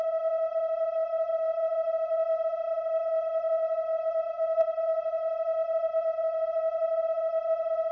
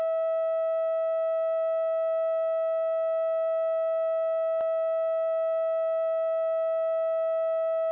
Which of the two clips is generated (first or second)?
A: first